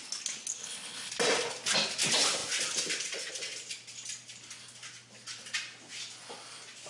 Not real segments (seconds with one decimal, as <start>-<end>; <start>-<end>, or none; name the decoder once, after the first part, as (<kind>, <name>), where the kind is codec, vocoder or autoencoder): 0.6-1.1 (codec, HILCodec)